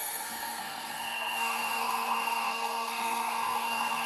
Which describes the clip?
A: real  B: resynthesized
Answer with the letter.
B